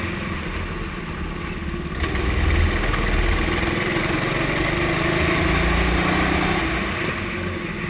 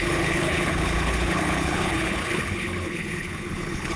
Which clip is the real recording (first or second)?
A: first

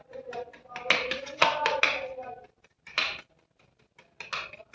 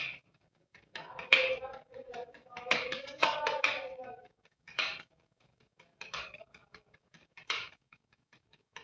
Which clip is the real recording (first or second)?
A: first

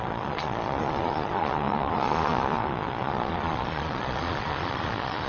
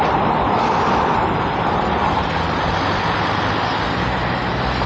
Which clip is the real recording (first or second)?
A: second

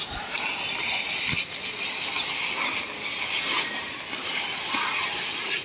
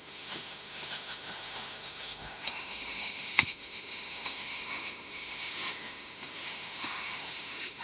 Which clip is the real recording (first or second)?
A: first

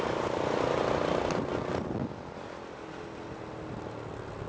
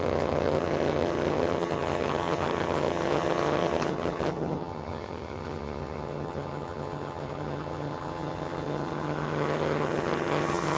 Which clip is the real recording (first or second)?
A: first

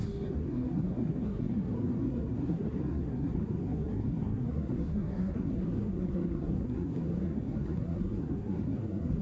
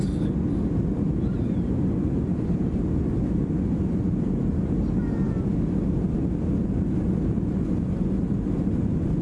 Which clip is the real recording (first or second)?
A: second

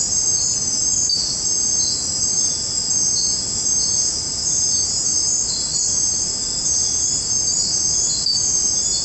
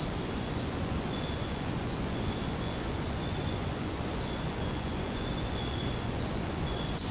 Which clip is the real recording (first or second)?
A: first